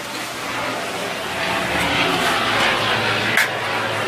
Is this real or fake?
real